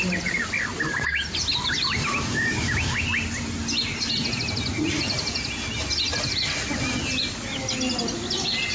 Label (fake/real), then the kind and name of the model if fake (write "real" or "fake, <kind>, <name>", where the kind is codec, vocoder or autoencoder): real